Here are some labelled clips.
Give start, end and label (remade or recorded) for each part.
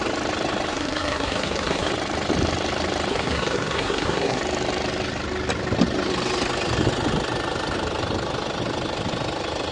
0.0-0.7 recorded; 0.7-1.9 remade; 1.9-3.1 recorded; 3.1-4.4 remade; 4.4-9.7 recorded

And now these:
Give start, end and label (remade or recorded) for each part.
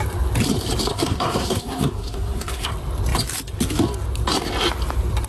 0.0-0.9 recorded; 0.9-2.7 remade; 2.7-5.3 recorded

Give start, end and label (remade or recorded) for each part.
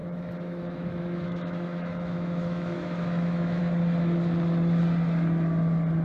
0.0-3.6 remade; 3.6-6.0 recorded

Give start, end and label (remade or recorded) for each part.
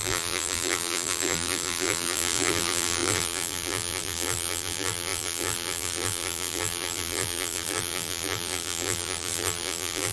0.0-10.1 remade